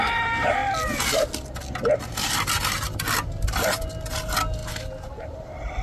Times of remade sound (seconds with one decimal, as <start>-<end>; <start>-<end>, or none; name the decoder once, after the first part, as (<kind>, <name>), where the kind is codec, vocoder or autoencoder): 0.0-0.6 (vocoder, BigVGAN v2); 4.1-4.6; 5.1-5.8

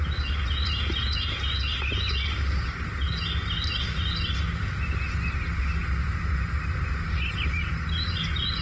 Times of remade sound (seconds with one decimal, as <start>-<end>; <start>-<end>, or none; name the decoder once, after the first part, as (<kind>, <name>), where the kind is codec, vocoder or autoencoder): 3.4-5.0 (vocoder, BigVGAN v2); 5.8-7.7

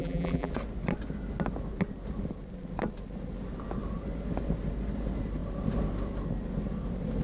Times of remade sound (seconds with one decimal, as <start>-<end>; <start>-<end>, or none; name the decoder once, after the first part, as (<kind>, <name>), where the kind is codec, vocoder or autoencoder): 0.0-0.5 (vocoder, BigVGAN v2)

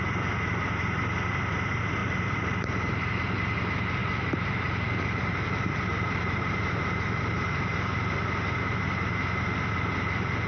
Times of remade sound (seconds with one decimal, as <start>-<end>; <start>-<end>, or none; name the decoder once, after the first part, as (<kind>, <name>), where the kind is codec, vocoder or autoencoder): 2.0-3.6 (vocoder, BigVGAN v2); 4.0-6.4